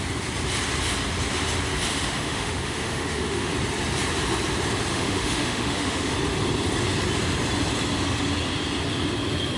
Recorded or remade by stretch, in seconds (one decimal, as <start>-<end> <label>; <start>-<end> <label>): 0.0-1.9 recorded; 1.9-3.5 remade; 3.5-4.9 recorded; 4.9-6.1 remade; 6.1-9.6 recorded